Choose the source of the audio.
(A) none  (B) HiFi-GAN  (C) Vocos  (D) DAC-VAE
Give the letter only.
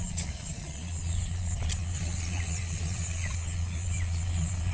C